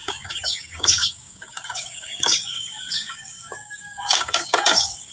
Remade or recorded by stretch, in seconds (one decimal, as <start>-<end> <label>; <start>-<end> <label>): 0.0-5.1 remade